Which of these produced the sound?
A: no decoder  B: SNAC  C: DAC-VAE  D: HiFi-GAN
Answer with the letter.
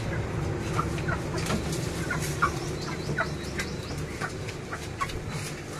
A